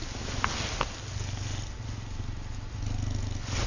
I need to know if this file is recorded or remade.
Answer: recorded